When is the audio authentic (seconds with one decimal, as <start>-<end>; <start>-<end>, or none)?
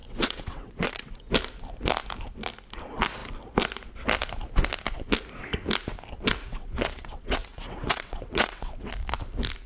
1.3-6.5; 8.9-9.7